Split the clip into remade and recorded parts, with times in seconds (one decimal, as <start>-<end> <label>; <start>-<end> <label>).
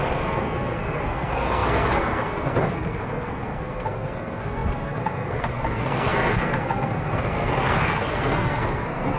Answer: 0.0-9.2 remade